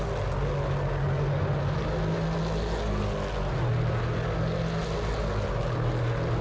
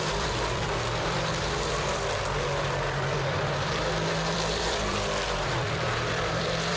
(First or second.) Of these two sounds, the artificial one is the second